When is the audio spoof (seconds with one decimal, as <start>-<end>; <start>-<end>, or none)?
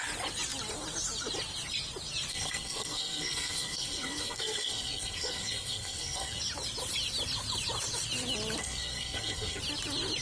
2.3-6.4; 8.6-9.6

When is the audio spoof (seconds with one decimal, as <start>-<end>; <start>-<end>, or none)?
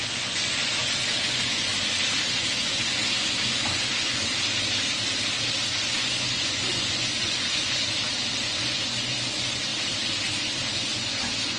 0.0-1.7; 2.3-4.3; 5.6-7.8; 8.4-9.7; 10.4-11.6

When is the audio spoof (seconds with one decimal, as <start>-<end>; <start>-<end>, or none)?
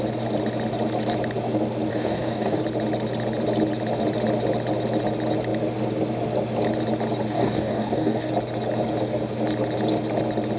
1.9-2.6; 7.3-8.3